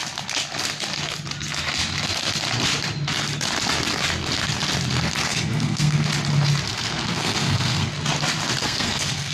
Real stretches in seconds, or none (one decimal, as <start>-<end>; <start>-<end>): 0.0-5.3; 6.1-6.7; 7.9-8.6